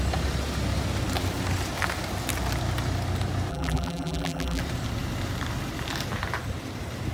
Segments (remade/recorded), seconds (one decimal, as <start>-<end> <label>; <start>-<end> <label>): 0.0-3.5 recorded; 3.5-4.6 remade; 4.6-7.1 recorded